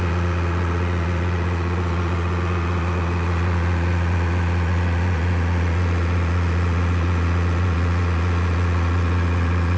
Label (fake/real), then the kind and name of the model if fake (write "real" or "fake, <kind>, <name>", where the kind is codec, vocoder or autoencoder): fake, vocoder, Vocos